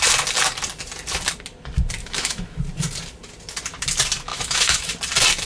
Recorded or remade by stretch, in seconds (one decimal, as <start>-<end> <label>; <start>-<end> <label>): 0.0-2.0 recorded; 2.0-2.6 remade; 2.6-4.3 recorded; 4.3-4.9 remade; 4.9-5.4 recorded